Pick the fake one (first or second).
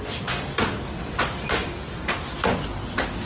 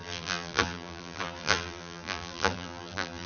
second